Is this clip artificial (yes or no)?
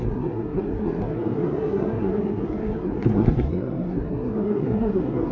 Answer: yes